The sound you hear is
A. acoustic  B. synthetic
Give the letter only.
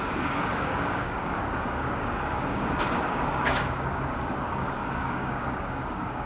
B